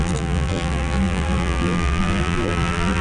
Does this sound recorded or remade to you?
remade